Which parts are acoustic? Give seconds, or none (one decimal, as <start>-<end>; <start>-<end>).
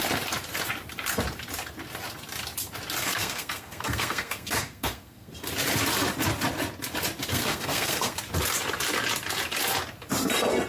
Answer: 0.0-3.0; 5.3-7.3; 8.2-10.7